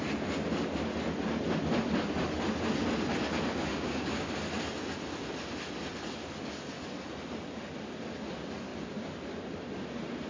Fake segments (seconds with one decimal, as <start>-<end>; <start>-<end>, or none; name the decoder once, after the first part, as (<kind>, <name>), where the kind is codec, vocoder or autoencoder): 3.7-4.3 (codec, DAC)